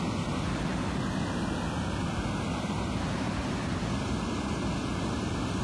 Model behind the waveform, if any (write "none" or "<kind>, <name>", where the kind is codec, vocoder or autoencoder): none